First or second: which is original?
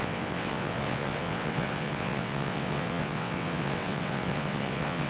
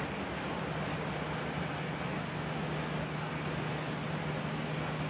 second